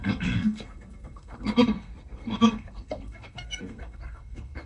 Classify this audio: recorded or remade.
remade